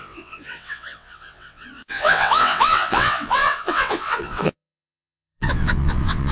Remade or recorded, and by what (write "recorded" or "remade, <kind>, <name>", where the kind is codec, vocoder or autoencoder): remade, vocoder, WaveNeXt